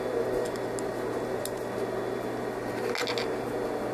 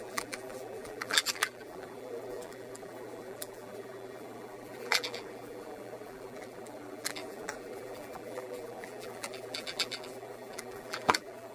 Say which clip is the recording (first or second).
first